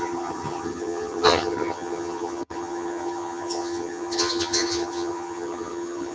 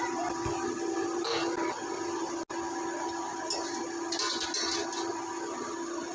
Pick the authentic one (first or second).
second